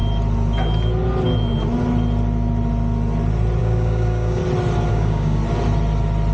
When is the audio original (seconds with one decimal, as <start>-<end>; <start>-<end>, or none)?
0.0-3.6; 4.4-4.9; 5.4-6.3